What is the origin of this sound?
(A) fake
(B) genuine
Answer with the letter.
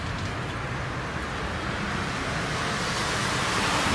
B